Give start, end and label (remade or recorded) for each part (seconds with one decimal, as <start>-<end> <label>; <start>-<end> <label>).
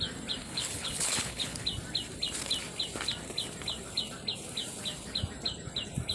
0.0-0.4 recorded; 0.4-1.6 remade; 1.6-6.1 recorded